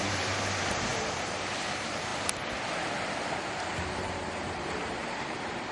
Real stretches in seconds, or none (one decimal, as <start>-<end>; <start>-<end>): 2.1-3.9